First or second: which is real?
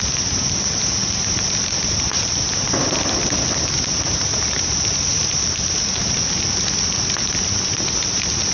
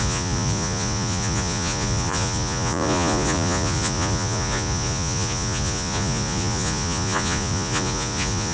first